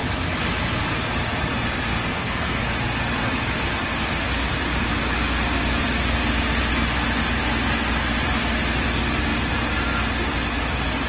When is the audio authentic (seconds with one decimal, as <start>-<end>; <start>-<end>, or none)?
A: 0.0-2.1; 2.6-11.1